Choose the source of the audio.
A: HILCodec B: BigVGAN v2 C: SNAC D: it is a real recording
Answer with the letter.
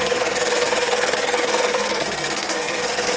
C